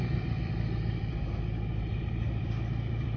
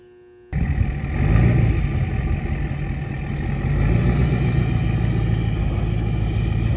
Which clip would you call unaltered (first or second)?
second